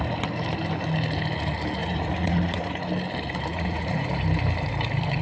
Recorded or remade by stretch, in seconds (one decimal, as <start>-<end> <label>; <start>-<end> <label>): 0.0-1.8 recorded; 1.8-2.9 remade; 2.9-3.5 recorded; 3.5-4.1 remade; 4.1-5.2 recorded